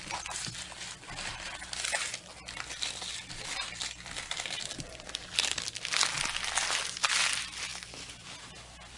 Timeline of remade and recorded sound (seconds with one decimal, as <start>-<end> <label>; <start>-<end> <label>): 0.0-9.0 recorded